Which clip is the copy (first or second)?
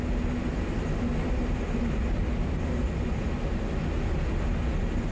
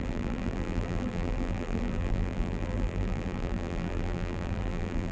second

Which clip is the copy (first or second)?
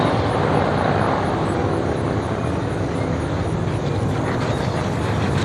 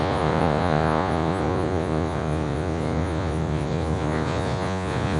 second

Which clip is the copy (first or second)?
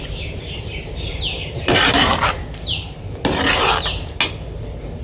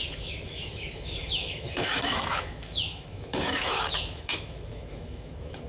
second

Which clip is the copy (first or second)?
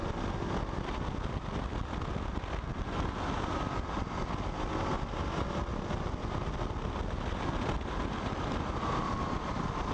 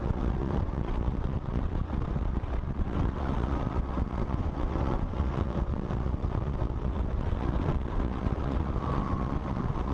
second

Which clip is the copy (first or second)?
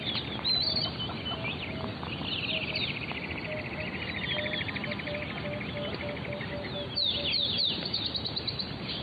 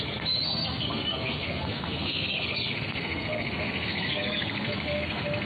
second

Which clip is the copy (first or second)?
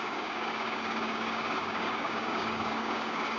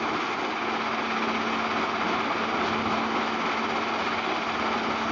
first